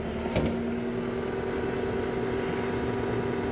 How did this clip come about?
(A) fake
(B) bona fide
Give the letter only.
B